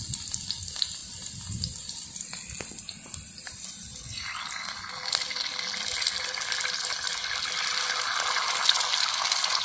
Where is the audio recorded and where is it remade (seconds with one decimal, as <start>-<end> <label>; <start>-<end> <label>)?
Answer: 0.0-9.6 recorded